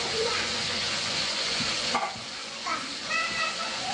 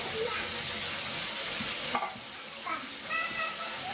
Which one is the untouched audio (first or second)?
second